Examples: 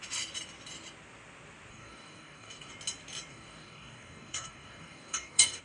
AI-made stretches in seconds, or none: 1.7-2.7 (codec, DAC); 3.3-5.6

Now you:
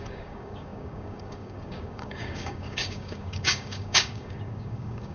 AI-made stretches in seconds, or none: 0.0-5.1 (codec, DAC)

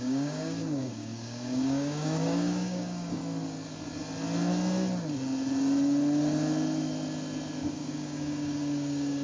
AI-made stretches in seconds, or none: 0.0-3.2 (codec, DAC); 7.7-9.2

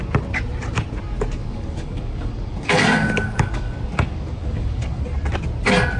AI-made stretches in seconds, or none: 1.4-5.0 (codec, DAC)

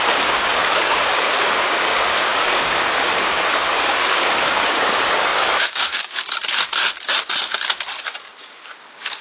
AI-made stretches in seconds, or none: 0.0-6.2 (codec, DAC); 8.4-9.2